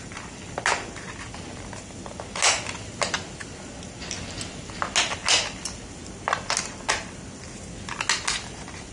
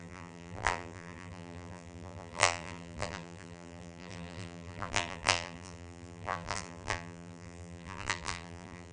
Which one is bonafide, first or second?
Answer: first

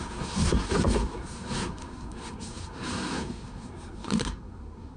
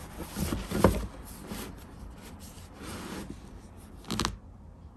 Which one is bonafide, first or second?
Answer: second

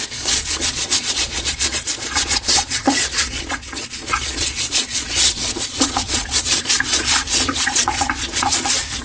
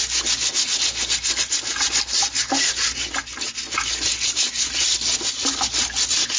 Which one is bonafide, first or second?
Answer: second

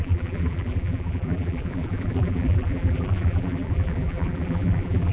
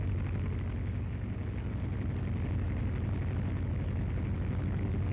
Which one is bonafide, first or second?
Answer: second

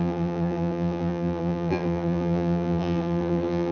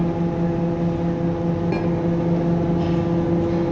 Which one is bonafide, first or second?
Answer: second